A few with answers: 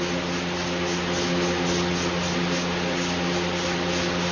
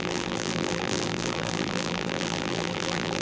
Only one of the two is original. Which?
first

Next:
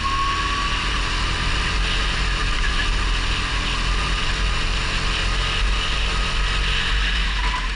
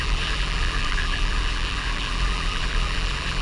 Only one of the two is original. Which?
first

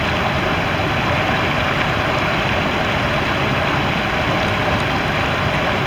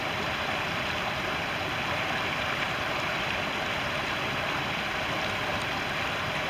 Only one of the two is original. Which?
first